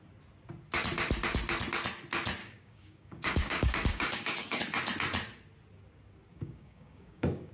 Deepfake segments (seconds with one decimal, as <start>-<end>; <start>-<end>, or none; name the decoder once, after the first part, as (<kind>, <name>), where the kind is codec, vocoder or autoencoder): 2.4-4.6 (codec, DAC); 6.3-7.5